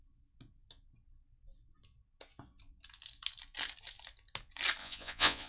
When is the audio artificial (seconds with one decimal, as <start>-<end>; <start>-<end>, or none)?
4.8-5.5